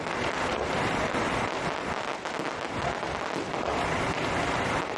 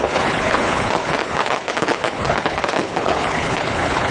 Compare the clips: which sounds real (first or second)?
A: first